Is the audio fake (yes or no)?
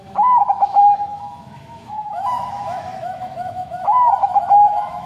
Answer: yes